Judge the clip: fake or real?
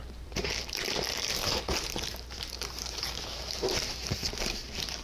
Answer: fake